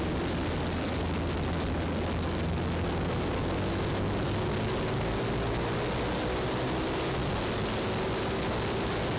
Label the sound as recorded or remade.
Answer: recorded